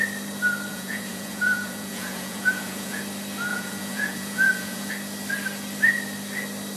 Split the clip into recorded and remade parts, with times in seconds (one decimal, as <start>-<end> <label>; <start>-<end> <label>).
0.0-0.7 recorded; 0.7-3.0 remade; 3.0-3.5 recorded; 3.5-4.9 remade; 4.9-6.8 recorded